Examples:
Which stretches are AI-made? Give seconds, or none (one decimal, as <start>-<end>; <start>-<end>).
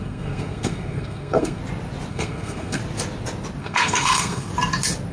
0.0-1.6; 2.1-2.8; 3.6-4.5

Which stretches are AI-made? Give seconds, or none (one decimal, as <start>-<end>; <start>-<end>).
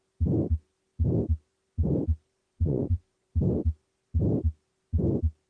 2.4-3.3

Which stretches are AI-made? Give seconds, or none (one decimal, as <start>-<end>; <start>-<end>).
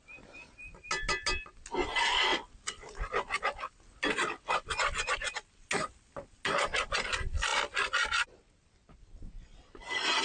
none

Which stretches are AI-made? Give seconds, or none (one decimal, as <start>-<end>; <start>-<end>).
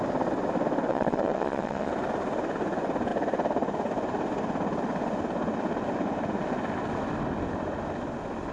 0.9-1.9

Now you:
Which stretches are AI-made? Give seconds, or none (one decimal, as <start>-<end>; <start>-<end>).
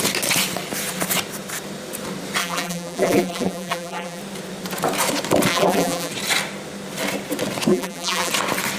2.4-4.2; 5.5-6.1; 7.7-8.3